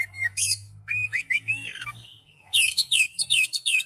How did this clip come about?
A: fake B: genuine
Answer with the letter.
A